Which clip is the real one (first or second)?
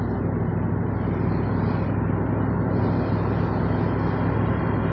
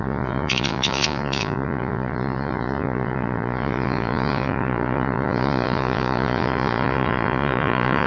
first